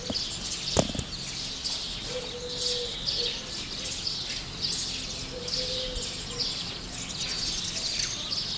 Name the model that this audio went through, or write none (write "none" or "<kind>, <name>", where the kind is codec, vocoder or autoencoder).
none